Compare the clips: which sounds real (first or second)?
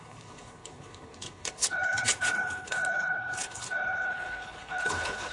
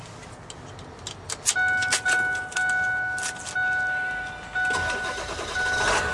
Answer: second